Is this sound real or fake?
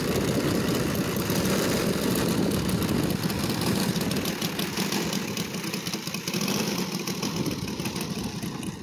real